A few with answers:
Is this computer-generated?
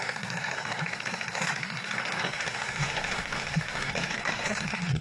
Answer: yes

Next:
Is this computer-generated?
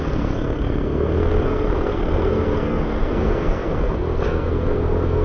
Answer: yes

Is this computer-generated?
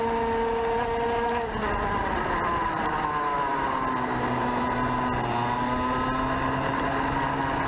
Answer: no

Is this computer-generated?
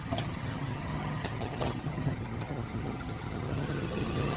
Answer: yes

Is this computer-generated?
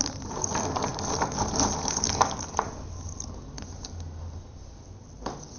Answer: no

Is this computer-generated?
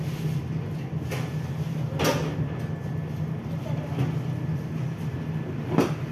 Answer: no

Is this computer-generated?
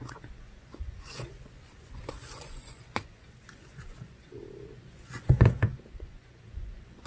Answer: yes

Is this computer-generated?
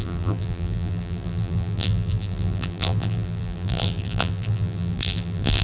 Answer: yes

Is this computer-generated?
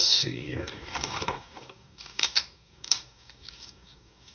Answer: yes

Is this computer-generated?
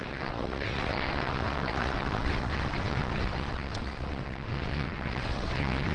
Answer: yes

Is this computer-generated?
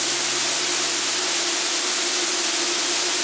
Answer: no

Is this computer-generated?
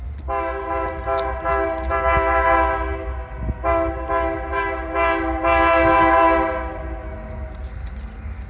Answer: no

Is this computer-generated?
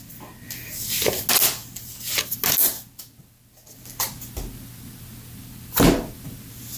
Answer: no